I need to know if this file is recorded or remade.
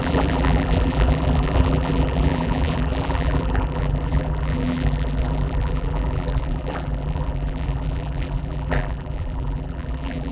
remade